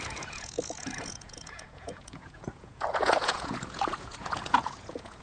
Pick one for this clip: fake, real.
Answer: fake